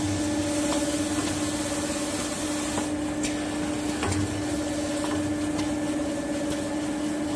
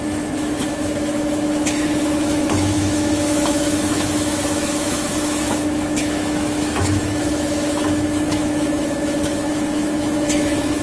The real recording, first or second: first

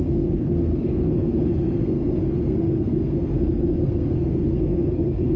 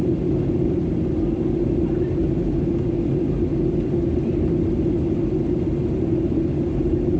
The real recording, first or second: second